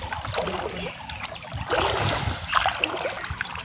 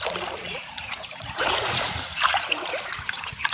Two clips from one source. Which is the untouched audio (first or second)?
first